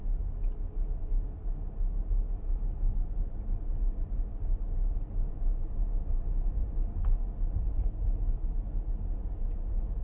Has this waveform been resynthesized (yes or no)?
no